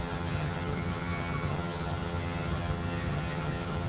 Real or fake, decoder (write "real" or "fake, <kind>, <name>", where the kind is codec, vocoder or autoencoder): fake, vocoder, HiFi-GAN